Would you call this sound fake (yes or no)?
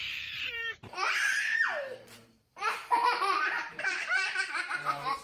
yes